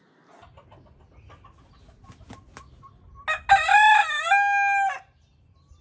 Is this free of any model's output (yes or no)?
yes